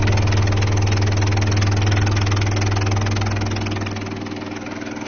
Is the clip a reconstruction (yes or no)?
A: no